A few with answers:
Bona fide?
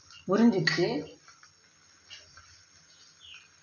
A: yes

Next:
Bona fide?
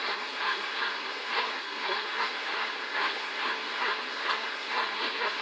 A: no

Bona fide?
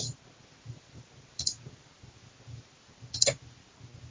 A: yes